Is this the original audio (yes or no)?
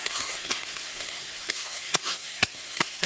no